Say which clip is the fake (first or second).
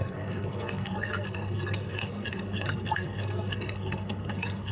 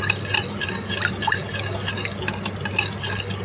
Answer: first